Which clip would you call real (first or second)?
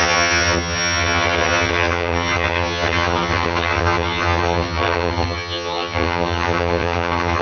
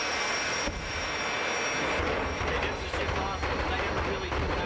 second